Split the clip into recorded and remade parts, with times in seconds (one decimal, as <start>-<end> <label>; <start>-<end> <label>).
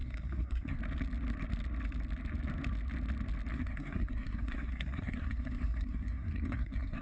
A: 0.0-0.8 remade; 0.8-3.5 recorded; 3.5-7.0 remade